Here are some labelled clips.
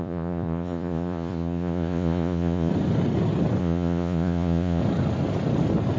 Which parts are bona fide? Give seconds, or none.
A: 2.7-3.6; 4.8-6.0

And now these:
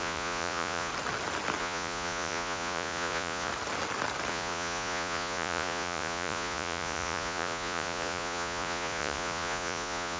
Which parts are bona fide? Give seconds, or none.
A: 0.9-1.6; 3.5-4.3

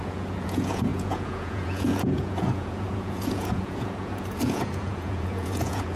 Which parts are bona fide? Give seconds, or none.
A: none

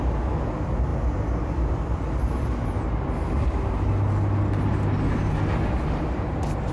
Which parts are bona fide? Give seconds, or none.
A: 0.0-6.7